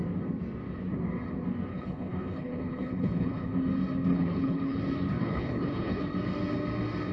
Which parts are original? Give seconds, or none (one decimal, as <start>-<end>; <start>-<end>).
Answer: 0.0-1.7; 3.5-4.1; 4.8-5.2; 6.0-7.1